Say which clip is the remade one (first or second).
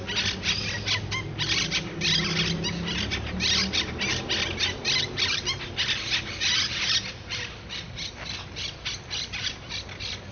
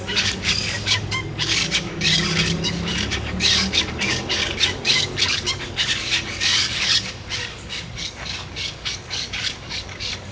second